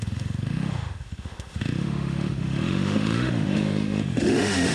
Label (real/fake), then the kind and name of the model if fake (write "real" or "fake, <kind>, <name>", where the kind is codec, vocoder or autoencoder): fake, autoencoder, DAC-VAE